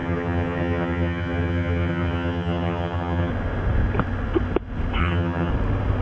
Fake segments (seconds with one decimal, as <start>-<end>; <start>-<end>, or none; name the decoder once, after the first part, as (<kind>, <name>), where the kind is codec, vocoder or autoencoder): 0.0-3.3 (vocoder, HiFi-GAN); 5.0-5.5